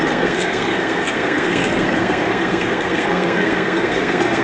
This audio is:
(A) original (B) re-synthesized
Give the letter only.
B